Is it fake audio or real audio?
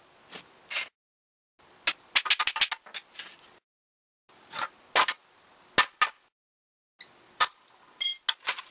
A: real